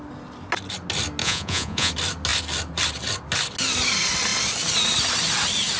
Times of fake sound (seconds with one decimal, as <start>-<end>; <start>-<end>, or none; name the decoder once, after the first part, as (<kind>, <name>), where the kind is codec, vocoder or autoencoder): 1.2-1.9 (vocoder, Vocos)